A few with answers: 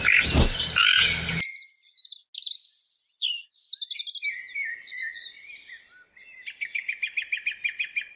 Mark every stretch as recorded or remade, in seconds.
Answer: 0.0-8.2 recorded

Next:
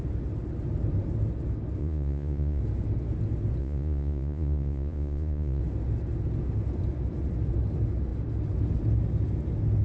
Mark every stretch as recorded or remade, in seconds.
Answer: 0.0-1.8 recorded; 1.8-2.6 remade; 2.6-3.6 recorded; 3.6-5.6 remade; 5.6-9.8 recorded

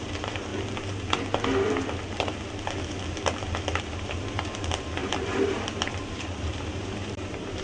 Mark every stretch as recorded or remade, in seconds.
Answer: 0.0-0.5 remade; 0.5-3.8 recorded; 3.8-7.6 remade

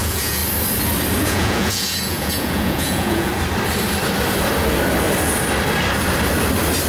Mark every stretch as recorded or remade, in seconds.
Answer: 0.0-0.4 remade; 0.4-1.2 recorded; 1.2-3.3 remade; 3.3-6.9 recorded